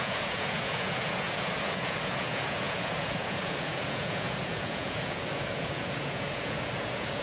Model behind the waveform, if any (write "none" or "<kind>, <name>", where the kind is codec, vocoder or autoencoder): vocoder, Vocos